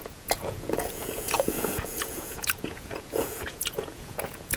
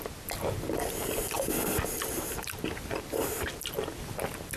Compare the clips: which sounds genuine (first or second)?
second